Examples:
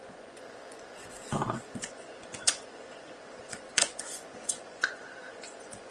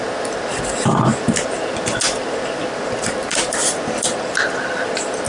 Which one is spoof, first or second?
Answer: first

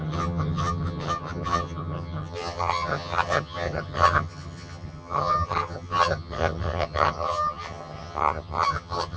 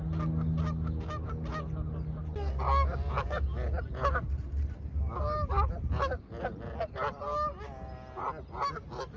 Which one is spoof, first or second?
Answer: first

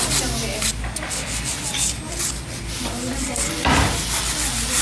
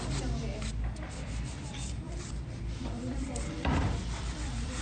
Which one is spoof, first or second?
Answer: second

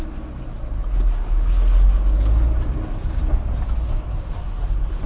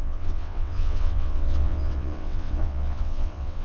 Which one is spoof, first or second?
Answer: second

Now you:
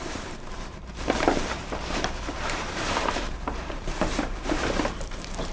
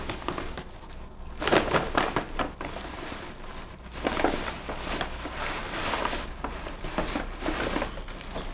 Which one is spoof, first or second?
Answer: first